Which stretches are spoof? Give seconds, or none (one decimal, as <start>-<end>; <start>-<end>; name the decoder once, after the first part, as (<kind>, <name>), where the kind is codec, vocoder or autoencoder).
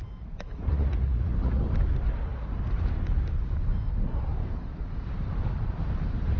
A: 0.7-1.6 (vocoder, Vocos)